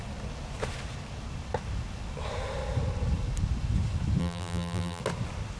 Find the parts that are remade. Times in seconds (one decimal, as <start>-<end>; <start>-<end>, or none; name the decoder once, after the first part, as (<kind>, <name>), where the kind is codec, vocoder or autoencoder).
4.2-5.0 (vocoder, BigVGAN v2)

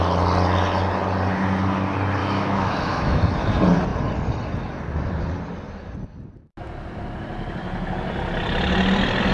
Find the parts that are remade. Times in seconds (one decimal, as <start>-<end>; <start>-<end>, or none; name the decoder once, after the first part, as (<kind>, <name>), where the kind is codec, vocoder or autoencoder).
2.2-3.2 (autoencoder, DAC-VAE)

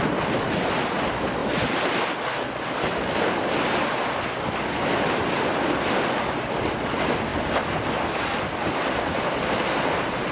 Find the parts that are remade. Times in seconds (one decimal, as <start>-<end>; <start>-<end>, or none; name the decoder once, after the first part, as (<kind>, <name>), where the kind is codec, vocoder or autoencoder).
none

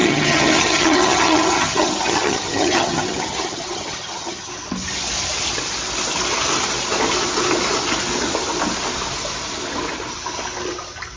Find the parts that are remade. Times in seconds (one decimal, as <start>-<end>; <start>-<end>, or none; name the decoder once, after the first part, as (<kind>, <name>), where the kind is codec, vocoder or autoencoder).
0.0-4.5 (vocoder, HiFi-GAN)

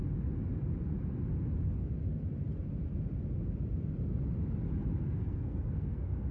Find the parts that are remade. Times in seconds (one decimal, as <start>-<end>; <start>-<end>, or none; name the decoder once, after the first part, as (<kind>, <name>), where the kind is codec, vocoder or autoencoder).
5.0-6.3 (codec, SNAC)

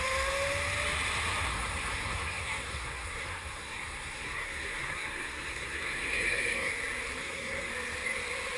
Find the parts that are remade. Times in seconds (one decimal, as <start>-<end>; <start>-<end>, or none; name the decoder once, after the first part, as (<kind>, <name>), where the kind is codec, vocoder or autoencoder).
1.5-6.7 (codec, SNAC); 7.2-7.7